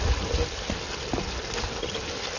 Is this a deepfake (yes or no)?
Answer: no